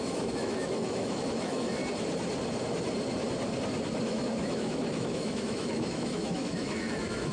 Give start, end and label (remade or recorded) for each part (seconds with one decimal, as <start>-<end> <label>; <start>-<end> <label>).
0.0-1.8 remade; 1.8-4.0 recorded; 4.0-7.3 remade